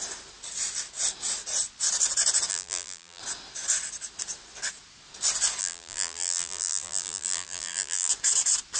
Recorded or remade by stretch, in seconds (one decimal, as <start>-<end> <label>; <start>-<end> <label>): 0.0-2.5 recorded; 2.5-3.2 remade; 3.2-5.6 recorded; 5.6-8.1 remade; 8.1-8.8 recorded